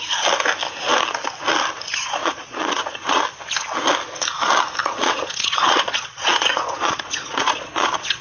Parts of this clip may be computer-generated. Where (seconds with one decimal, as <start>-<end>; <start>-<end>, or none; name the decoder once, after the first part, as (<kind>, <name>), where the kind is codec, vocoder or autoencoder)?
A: 2.2-3.2 (vocoder, Vocos); 4.8-8.2